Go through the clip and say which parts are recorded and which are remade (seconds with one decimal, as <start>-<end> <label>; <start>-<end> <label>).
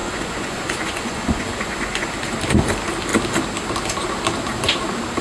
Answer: 0.0-2.1 remade; 2.1-5.2 recorded